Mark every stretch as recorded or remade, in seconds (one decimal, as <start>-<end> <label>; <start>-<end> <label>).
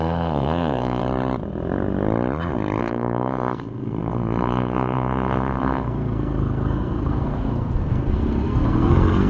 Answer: 0.0-1.0 remade; 1.0-2.8 recorded; 2.8-9.3 remade